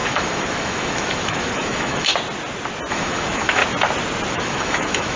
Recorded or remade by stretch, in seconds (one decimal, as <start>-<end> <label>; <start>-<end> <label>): 0.0-2.1 remade; 2.1-2.9 recorded; 2.9-3.6 remade; 3.6-4.3 recorded; 4.3-5.2 remade